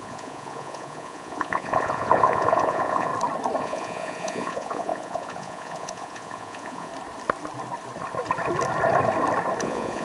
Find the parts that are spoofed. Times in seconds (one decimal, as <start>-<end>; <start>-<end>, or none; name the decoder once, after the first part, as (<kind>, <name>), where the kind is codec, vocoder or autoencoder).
0.0-3.1 (vocoder, Vocos); 3.6-6.9; 9.6-10.0